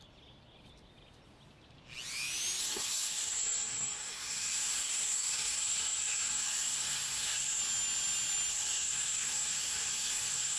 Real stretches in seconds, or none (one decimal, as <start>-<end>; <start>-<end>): 0.0-2.6; 7.6-8.5